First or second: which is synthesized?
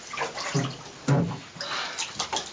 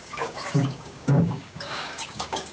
second